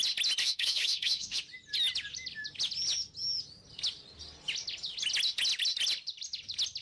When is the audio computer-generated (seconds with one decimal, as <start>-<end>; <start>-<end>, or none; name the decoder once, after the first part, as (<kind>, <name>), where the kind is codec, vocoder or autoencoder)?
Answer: 0.4-1.4 (autoencoder, DAC-VAE)

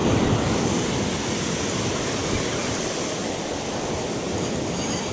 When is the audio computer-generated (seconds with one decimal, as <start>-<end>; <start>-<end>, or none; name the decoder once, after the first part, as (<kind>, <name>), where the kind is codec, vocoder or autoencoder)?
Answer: none

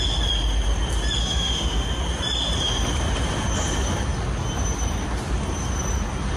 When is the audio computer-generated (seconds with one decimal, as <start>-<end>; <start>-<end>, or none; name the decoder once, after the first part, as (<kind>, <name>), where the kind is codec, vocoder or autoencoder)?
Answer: 1.2-2.0 (autoencoder, DAC-VAE)

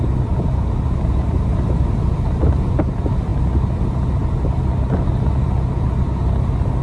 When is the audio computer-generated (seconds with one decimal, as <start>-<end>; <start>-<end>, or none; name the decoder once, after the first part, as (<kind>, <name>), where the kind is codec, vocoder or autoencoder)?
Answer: none

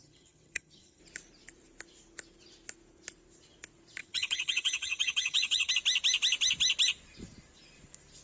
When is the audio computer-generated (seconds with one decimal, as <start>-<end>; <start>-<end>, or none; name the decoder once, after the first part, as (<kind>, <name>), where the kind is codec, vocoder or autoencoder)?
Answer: 0.0-1.0 (vocoder, HiFi-GAN); 4.0-5.7

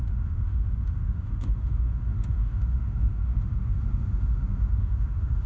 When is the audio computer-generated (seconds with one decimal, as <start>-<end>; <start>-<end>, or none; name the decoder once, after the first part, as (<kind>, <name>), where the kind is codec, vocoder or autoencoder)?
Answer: 0.0-5.5 (autoencoder, DAC-VAE)

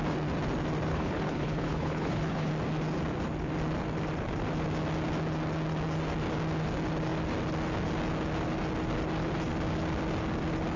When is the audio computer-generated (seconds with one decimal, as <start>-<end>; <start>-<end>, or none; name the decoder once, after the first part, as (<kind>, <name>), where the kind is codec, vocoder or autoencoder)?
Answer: 0.9-2.5 (codec, HILCodec)

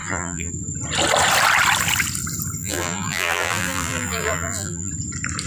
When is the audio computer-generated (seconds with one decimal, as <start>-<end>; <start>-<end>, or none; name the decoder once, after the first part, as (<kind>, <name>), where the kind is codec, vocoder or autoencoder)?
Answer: 0.0-0.5 (vocoder, BigVGAN v2); 2.6-4.9